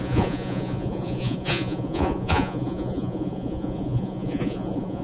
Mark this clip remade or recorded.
remade